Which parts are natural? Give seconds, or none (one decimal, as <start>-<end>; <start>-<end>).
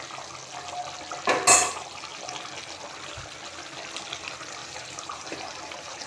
0.0-4.6